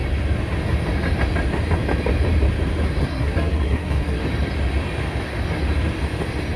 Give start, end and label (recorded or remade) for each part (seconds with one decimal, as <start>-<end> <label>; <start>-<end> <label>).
0.0-3.0 recorded; 3.0-4.2 remade; 4.2-6.6 recorded